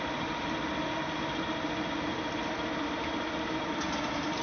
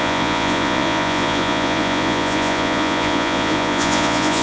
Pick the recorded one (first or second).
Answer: first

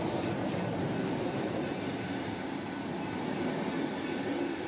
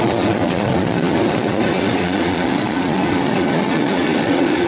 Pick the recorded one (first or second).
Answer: first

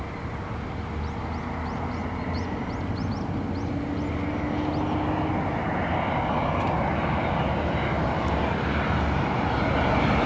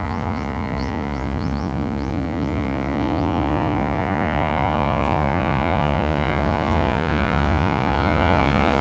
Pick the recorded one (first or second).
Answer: first